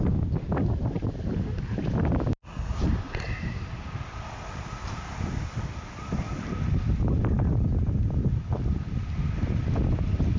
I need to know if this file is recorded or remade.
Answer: recorded